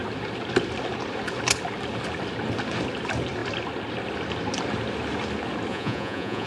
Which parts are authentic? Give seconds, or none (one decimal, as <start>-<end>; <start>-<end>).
0.0-5.7